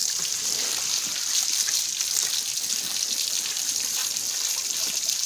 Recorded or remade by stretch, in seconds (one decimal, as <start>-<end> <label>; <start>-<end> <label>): 0.0-3.2 recorded; 3.2-4.0 remade; 4.0-4.8 recorded; 4.8-5.3 remade